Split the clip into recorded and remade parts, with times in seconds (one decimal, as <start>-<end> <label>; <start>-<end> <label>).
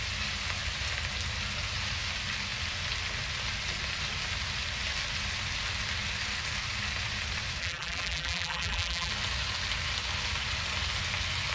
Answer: 0.0-7.6 recorded; 7.6-9.1 remade; 9.1-11.5 recorded